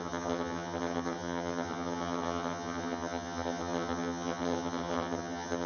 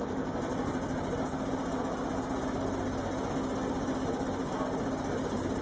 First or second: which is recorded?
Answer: second